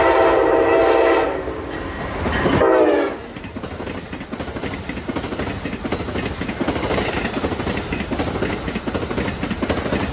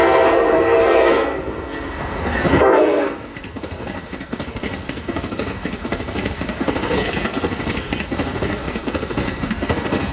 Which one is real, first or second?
first